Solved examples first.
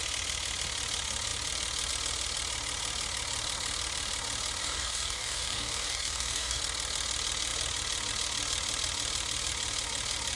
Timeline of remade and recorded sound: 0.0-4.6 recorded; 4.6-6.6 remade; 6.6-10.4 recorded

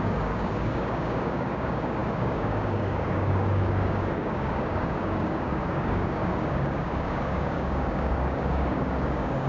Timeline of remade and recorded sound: 0.0-9.5 remade